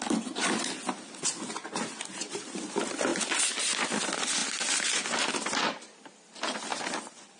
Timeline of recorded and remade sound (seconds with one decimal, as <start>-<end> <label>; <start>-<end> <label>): 0.0-7.4 recorded